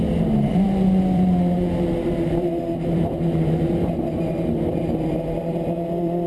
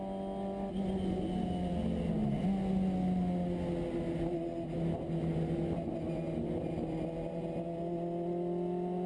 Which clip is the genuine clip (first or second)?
second